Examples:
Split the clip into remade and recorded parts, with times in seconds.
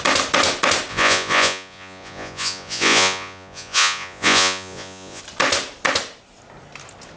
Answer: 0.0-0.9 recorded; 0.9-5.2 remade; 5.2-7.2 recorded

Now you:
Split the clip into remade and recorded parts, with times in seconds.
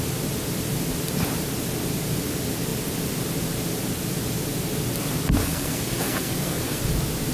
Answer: 0.0-5.4 recorded; 5.4-6.8 remade; 6.8-7.3 recorded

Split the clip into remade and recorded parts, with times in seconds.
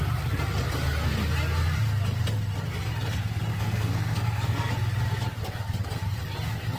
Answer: 0.0-3.5 recorded; 3.5-4.7 remade; 4.7-6.8 recorded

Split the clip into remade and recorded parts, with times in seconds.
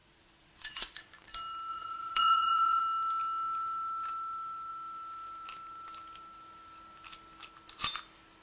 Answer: 0.0-1.1 remade; 1.1-1.7 recorded; 1.7-2.8 remade; 2.8-8.4 recorded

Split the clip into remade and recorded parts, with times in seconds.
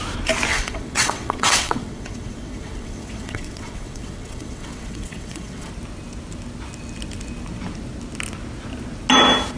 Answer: 0.0-0.5 recorded; 0.5-5.7 remade; 5.7-9.6 recorded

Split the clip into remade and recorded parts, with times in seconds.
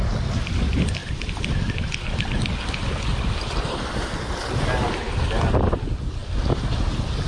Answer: 0.0-7.3 recorded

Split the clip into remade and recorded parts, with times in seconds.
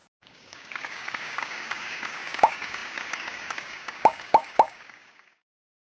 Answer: 0.0-6.0 remade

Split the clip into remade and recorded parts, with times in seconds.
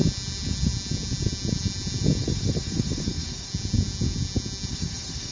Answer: 0.0-2.2 recorded; 2.2-3.5 remade; 3.5-4.7 recorded; 4.7-5.3 remade